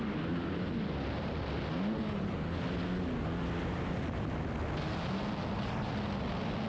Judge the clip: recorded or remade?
recorded